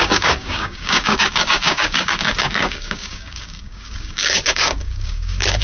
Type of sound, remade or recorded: remade